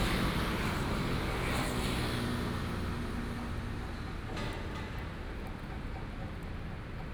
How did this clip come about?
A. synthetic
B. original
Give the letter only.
B